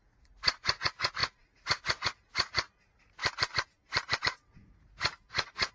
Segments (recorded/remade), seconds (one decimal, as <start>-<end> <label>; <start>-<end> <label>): 0.0-3.2 remade; 3.2-4.4 recorded; 4.4-5.7 remade

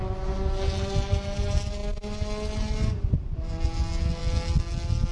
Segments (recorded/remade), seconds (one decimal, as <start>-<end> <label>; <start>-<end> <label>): 0.0-5.1 recorded

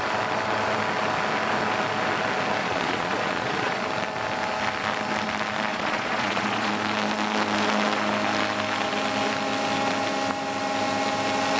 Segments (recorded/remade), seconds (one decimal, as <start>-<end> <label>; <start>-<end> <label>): 0.0-2.6 recorded; 2.6-3.8 remade; 3.8-5.7 recorded; 5.7-6.7 remade; 6.7-11.6 recorded

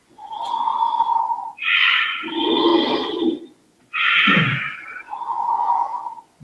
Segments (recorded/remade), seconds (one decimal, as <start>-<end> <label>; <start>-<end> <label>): 0.0-2.7 remade; 2.7-3.5 recorded; 3.5-6.4 remade

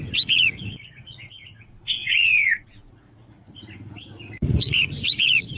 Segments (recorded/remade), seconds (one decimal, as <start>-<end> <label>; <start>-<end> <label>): 0.0-5.6 remade

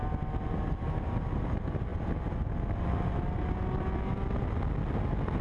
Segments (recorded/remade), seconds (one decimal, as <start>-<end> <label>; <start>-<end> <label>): 0.0-5.4 recorded

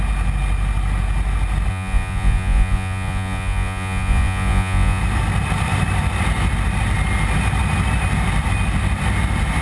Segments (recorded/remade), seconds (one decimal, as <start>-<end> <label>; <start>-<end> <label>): 0.0-1.7 recorded; 1.7-5.0 remade; 5.0-9.6 recorded

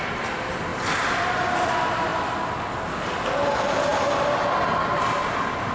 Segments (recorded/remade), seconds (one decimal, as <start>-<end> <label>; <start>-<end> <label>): 0.0-5.7 recorded